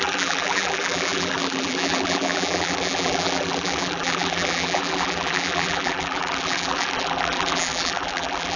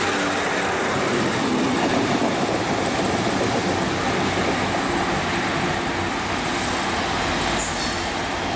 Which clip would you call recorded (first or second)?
second